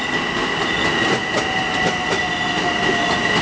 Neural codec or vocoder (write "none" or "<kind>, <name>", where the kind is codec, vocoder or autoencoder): none